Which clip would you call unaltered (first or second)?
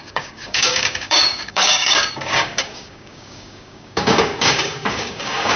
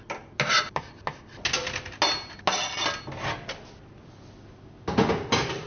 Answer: second